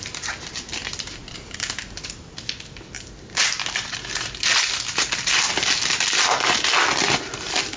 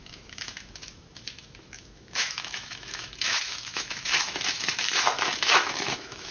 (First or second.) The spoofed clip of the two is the second